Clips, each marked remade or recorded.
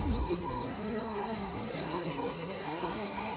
remade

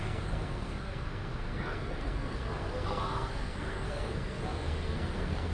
remade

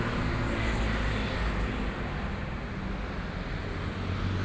recorded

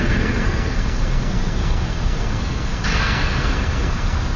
remade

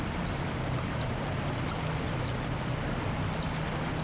recorded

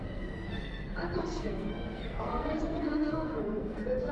remade